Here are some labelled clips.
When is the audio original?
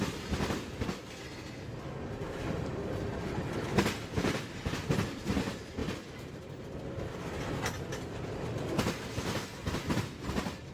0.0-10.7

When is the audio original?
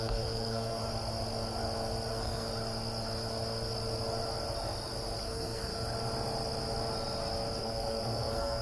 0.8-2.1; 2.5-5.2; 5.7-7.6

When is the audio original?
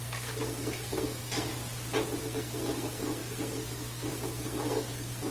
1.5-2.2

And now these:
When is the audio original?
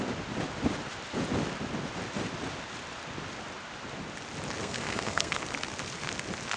0.0-4.6; 5.4-6.6